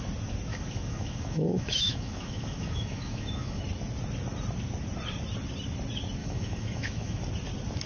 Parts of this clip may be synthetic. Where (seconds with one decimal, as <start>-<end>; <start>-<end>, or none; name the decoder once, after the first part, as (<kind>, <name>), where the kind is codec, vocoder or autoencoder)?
0.5-3.6 (autoencoder, DAC-VAE); 6.2-7.2